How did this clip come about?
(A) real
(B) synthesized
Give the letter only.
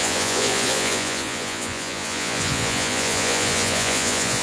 B